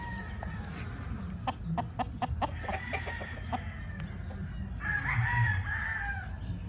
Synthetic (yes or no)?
no